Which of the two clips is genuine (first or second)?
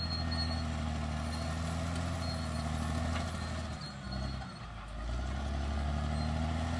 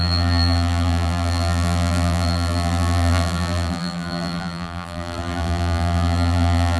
first